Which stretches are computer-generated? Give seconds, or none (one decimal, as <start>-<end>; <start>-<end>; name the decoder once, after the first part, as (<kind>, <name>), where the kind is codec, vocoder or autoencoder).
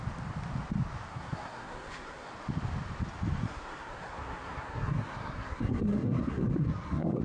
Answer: 1.1-2.3 (codec, SNAC); 3.4-7.2